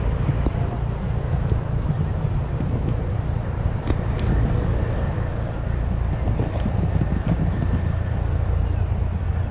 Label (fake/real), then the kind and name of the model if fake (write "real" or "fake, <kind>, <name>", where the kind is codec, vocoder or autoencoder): real